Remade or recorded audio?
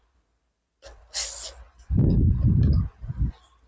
recorded